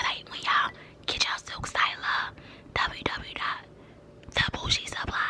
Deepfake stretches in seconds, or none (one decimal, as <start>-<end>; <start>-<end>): 0.0-1.2